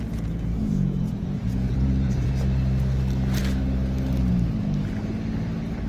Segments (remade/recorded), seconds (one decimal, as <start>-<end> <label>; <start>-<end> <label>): 0.0-0.5 recorded; 0.5-2.3 remade; 2.3-5.9 recorded